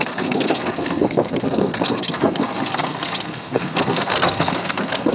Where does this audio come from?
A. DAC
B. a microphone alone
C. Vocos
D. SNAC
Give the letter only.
D